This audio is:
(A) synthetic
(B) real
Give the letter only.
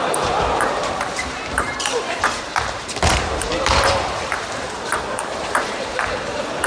A